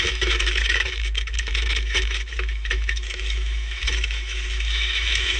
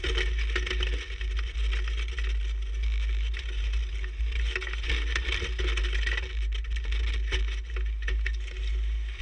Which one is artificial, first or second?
first